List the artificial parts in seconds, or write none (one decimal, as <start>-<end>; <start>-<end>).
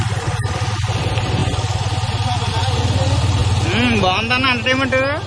0.0-1.4; 2.5-3.4